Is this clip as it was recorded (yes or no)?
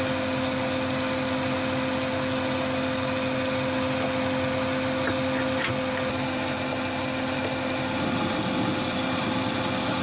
yes